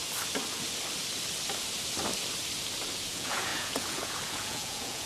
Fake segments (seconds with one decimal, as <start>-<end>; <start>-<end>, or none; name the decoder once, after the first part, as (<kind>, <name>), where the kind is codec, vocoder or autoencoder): 3.1-5.1 (vocoder, Vocos)